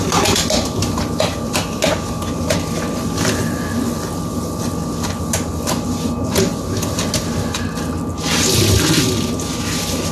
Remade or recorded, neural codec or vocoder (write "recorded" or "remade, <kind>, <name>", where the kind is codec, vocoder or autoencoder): recorded